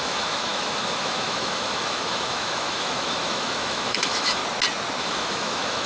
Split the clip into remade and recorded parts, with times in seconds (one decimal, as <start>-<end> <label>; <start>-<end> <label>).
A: 0.0-4.4 remade; 4.4-5.0 recorded; 5.0-5.9 remade